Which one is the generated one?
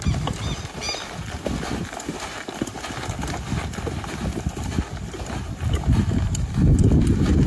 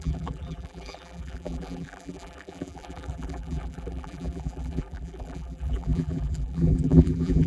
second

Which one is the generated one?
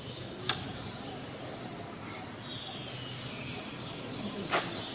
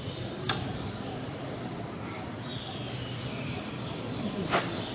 second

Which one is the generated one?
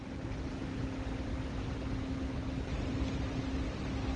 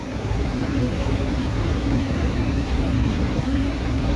second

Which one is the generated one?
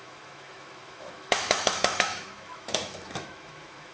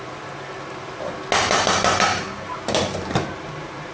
first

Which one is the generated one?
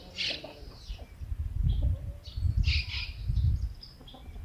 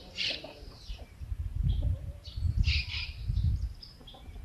second